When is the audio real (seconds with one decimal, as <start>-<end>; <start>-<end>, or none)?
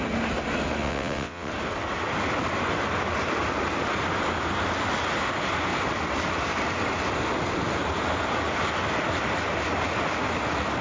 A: 0.0-0.8; 1.5-10.8